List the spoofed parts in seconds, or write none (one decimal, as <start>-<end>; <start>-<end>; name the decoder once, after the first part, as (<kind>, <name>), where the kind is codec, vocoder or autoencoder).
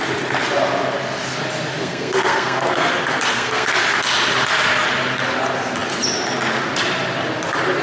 1.8-2.9 (codec, SNAC); 3.3-3.8